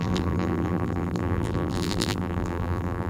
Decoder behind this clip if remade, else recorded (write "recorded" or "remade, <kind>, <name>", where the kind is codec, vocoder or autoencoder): remade, vocoder, BigVGAN v2